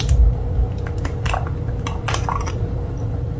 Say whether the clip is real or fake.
real